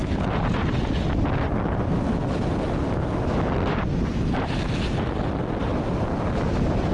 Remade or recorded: recorded